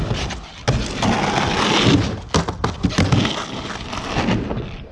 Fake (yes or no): no